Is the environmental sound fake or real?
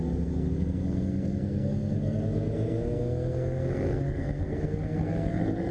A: fake